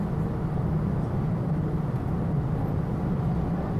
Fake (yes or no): no